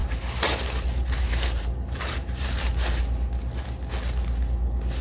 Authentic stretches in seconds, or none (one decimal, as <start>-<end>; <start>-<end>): 3.0-5.0